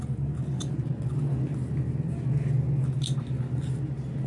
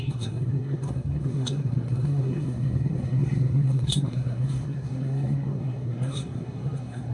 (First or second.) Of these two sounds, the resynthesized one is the second